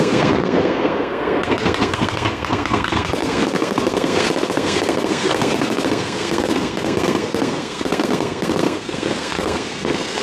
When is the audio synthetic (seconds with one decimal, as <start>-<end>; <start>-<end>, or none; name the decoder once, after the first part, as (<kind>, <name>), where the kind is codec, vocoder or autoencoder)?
0.0-10.2 (codec, SNAC)